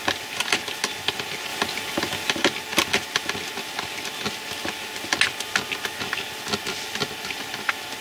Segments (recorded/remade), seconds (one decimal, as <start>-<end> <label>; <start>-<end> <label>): 0.0-8.0 recorded